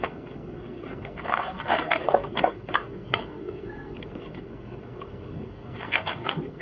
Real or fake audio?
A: fake